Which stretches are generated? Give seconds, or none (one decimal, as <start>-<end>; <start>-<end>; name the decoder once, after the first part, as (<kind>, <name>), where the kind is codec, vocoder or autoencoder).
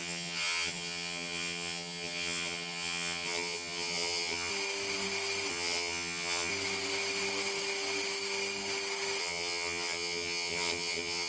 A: 0.0-4.5 (vocoder, HiFi-GAN); 5.5-6.5; 9.2-11.3